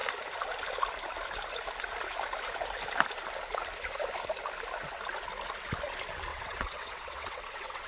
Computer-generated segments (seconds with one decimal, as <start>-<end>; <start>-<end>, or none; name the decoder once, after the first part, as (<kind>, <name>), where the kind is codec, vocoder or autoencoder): 6.3-7.9 (vocoder, WaveNeXt)